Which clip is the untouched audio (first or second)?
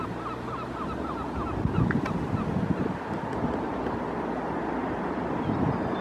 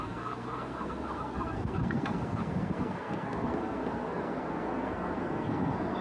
first